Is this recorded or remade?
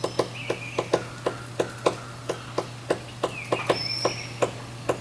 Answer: recorded